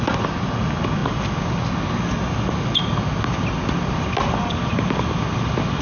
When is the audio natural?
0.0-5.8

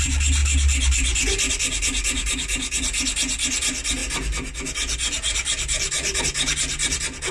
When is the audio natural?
0.0-7.3

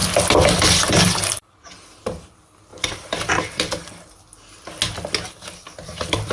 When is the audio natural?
0.0-1.3; 4.3-5.8